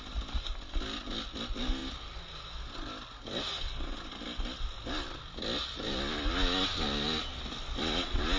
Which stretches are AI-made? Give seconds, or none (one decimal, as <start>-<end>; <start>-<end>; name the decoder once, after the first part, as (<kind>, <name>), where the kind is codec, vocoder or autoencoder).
none